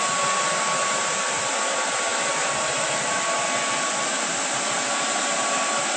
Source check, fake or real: real